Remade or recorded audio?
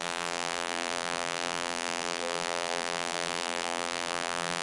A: remade